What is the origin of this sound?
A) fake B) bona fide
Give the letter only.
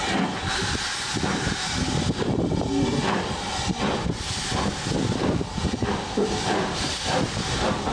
A